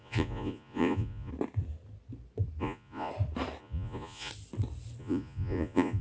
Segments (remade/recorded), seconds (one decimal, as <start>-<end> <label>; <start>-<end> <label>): 0.0-1.3 remade; 1.3-2.6 recorded; 2.6-3.1 remade; 3.1-3.6 recorded; 3.6-4.3 remade; 4.3-5.0 recorded; 5.0-6.0 remade